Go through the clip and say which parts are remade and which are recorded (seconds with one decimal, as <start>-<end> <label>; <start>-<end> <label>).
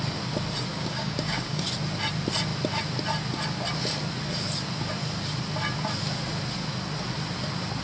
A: 0.0-0.7 recorded; 0.7-1.6 remade; 1.6-7.8 recorded